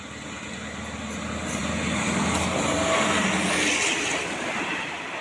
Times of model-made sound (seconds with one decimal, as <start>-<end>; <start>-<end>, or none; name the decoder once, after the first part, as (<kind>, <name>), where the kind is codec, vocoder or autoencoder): none